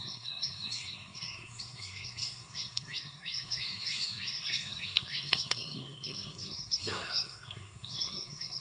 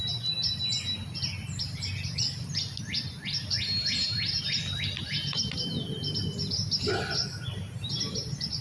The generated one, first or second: first